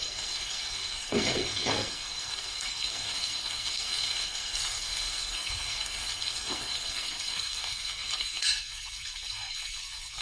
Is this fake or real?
fake